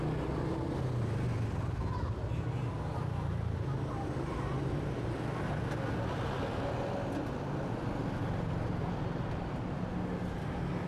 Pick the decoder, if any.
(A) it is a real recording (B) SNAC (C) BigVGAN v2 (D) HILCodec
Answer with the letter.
A